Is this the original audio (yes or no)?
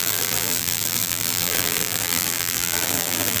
no